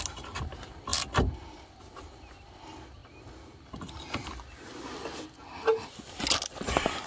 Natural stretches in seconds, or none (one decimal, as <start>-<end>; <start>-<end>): 0.0-7.1